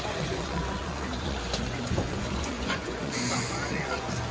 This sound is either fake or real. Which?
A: fake